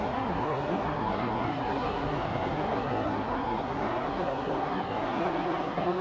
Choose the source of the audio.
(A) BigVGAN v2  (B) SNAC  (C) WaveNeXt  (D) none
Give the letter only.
B